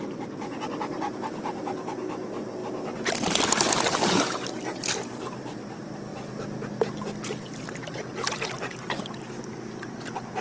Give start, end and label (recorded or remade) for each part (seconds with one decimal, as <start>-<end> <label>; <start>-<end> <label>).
0.0-10.4 recorded